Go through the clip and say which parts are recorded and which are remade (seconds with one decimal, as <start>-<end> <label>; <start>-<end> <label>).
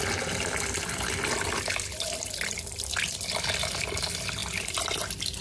0.0-5.4 recorded